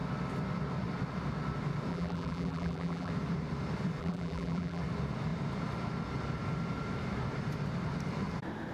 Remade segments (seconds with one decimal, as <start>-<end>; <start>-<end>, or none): 1.9-3.1; 4.0-4.8